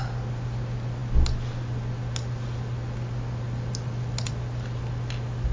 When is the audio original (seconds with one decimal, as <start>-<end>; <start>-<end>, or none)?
0.0-5.5